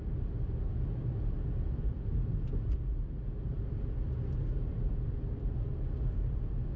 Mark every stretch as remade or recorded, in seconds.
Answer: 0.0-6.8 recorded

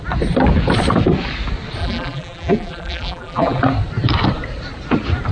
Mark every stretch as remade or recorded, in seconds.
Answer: 0.0-1.8 recorded; 1.8-3.6 remade; 3.6-5.3 recorded